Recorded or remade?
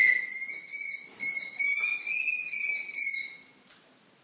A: recorded